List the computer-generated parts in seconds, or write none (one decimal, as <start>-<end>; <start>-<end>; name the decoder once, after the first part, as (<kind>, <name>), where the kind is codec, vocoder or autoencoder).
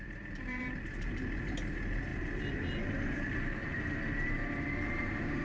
0.0-5.4 (vocoder, BigVGAN v2)